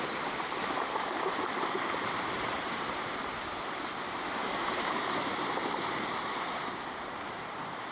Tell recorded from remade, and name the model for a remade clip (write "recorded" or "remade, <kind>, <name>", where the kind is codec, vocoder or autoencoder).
remade, vocoder, BigVGAN v2